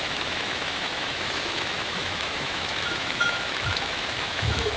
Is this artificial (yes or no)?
yes